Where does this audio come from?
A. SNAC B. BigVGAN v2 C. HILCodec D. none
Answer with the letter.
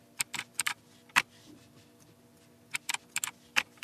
B